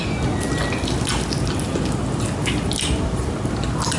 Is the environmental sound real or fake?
real